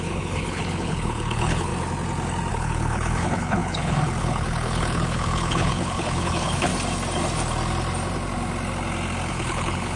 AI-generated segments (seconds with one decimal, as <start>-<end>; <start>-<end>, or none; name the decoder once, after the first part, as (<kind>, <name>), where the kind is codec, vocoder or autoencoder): 0.0-1.7 (codec, HILCodec); 2.5-6.7; 9.3-10.0